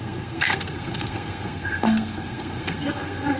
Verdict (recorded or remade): remade